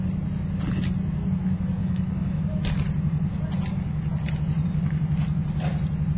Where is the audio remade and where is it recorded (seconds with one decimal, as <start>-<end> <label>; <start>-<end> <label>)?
0.0-1.8 recorded; 1.8-2.4 remade; 2.4-6.2 recorded